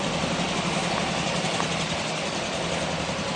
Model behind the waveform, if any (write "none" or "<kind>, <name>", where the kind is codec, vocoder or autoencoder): none